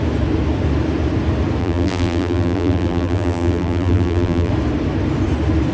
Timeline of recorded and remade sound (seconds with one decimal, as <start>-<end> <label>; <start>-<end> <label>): 0.0-1.6 recorded; 1.6-4.5 remade; 4.5-5.7 recorded